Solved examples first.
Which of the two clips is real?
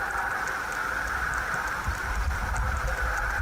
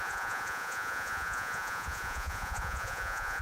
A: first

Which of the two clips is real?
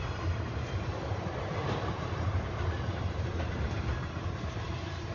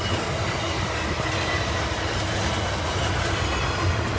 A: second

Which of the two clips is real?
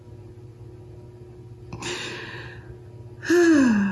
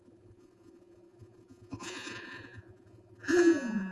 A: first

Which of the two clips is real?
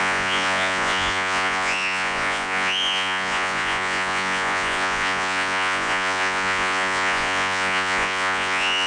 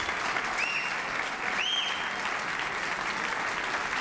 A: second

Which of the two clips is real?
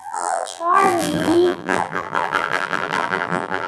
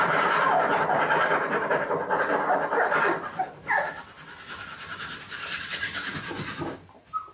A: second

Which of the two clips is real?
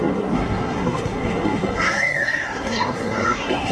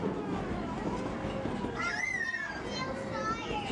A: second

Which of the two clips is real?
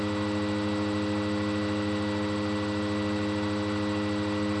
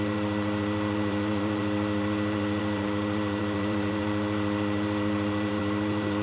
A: first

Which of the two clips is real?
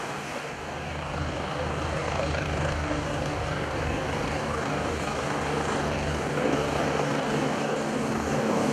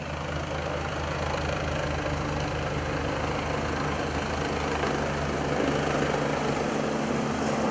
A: second